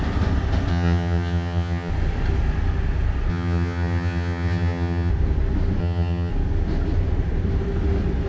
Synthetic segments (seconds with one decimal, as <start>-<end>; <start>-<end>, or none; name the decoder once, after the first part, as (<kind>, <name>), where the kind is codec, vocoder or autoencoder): 0.7-1.9 (vocoder, HiFi-GAN); 3.3-5.1; 5.8-6.3